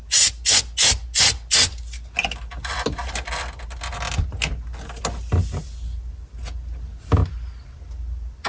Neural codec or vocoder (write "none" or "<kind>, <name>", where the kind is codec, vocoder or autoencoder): none